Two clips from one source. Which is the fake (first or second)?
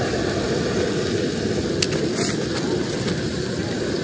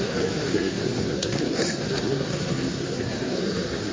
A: second